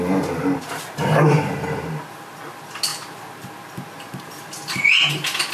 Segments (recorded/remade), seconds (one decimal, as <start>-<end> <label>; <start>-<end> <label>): 0.0-5.5 recorded